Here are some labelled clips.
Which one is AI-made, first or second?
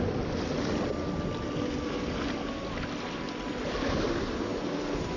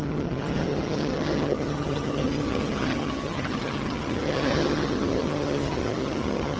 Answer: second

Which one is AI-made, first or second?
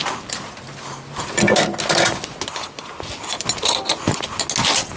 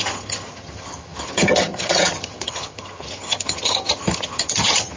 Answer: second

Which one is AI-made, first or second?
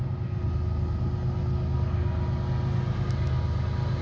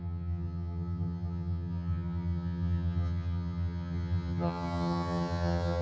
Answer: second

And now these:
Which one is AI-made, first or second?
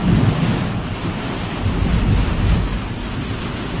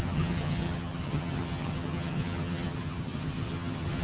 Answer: second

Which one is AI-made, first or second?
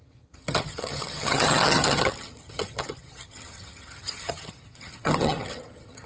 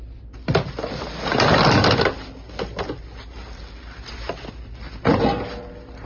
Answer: first